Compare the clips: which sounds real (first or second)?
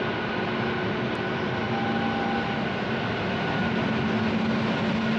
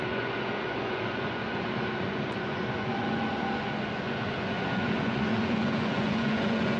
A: first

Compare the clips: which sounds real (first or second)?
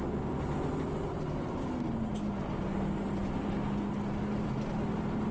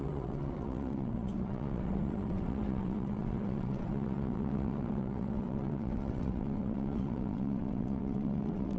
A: first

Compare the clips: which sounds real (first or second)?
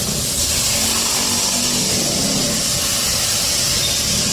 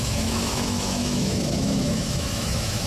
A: first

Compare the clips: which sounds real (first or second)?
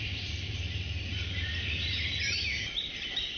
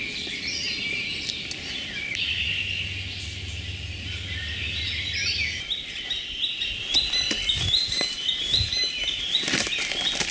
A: second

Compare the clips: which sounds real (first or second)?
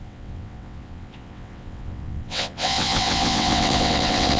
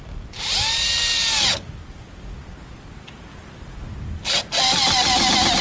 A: second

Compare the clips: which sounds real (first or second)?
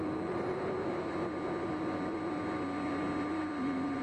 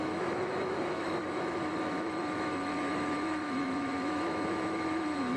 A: first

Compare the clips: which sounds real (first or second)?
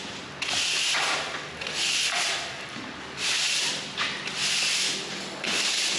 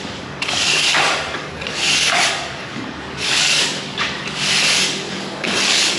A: first